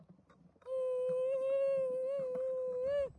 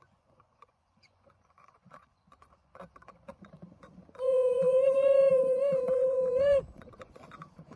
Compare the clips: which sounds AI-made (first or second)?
second